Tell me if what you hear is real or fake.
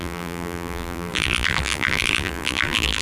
fake